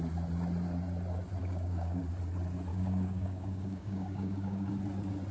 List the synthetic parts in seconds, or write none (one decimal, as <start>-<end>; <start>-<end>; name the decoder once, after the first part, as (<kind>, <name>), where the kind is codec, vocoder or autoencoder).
1.4-2.0 (codec, DAC); 2.7-4.7